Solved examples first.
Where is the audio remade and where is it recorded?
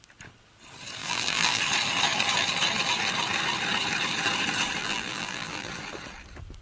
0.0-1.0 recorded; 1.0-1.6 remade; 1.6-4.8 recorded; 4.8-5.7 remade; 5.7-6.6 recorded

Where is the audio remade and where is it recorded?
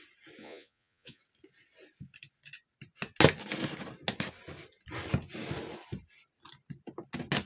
0.0-0.4 recorded; 0.4-1.2 remade; 1.2-7.5 recorded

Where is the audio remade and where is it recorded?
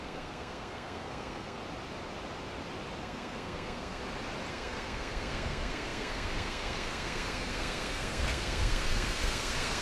0.0-1.6 remade; 1.6-3.0 recorded; 3.0-4.0 remade; 4.0-4.5 recorded; 4.5-9.8 remade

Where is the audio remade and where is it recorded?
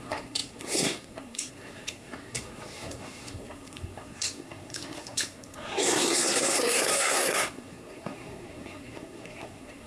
0.0-9.9 remade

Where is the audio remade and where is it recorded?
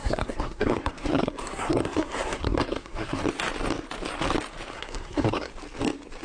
0.0-3.2 remade; 3.2-4.7 recorded; 4.7-5.5 remade; 5.5-6.2 recorded